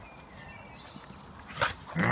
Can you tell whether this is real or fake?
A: real